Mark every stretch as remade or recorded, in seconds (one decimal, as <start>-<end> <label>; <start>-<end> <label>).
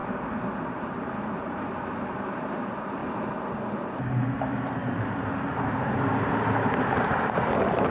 0.0-0.6 recorded; 0.6-3.0 remade; 3.0-3.6 recorded; 3.6-7.9 remade